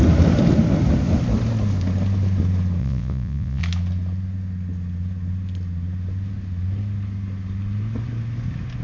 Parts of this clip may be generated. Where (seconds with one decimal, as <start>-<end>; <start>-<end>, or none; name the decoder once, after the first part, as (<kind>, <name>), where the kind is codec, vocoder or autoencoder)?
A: 2.8-3.6 (vocoder, Vocos)